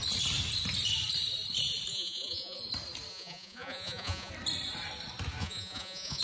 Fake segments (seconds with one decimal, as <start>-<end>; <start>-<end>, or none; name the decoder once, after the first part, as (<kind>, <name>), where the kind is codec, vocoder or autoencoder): 1.9-2.6 (vocoder, Vocos); 3.1-4.3; 5.4-6.2